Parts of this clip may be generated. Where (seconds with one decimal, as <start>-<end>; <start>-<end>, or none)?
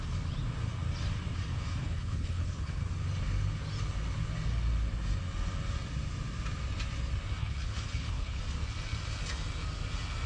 1.8-2.8; 7.4-8.4